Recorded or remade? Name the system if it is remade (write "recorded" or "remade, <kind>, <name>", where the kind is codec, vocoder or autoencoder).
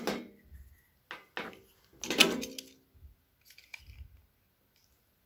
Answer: recorded